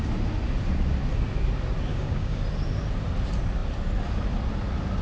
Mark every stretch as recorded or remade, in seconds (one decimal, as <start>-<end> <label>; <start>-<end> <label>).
0.0-1.9 recorded; 1.9-2.4 remade; 2.4-5.0 recorded